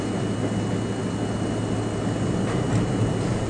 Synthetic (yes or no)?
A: no